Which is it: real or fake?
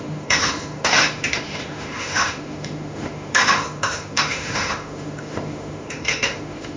fake